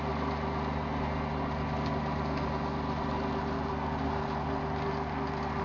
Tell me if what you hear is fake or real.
real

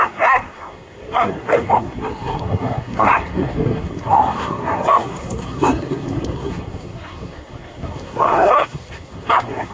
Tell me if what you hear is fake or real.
fake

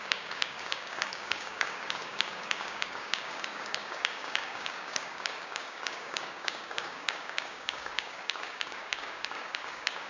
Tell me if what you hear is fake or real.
fake